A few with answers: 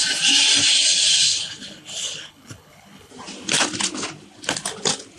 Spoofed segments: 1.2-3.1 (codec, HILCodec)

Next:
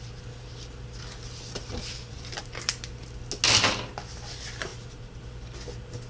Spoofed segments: 1.7-2.4 (vocoder, BigVGAN v2)

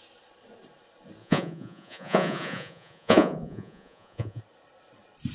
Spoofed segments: 1.2-4.4 (vocoder, Vocos)

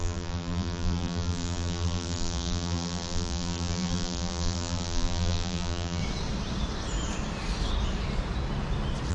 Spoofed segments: 0.0-6.0 (vocoder, BigVGAN v2)

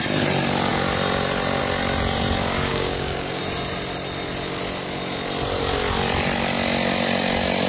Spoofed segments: 2.7-3.4 (codec, DAC)

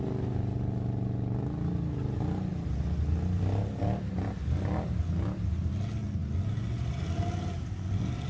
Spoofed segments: none

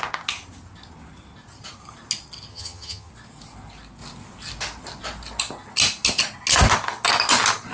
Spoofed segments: 2.5-3.1 (vocoder, HiFi-GAN)